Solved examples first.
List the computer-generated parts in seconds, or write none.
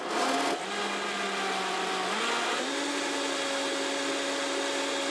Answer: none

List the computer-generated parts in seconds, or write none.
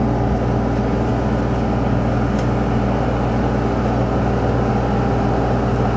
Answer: none